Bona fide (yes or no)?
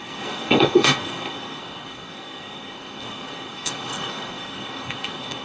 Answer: no